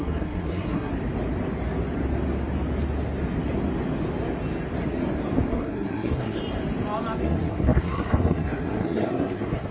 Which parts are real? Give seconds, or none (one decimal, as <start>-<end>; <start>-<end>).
0.9-5.5; 6.4-7.2